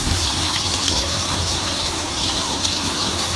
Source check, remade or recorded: remade